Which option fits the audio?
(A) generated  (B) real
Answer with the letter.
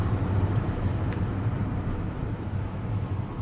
A